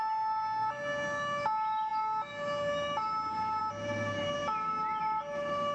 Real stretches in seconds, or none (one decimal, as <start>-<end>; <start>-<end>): 0.0-5.7